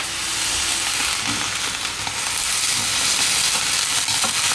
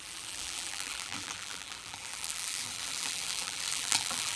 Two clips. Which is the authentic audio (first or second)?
first